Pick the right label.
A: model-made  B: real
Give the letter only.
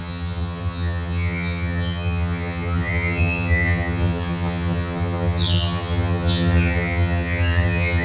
A